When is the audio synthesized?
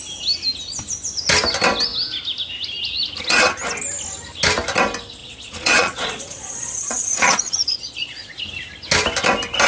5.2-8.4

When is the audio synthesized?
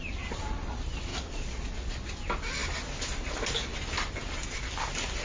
none